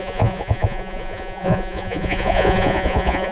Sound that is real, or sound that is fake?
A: fake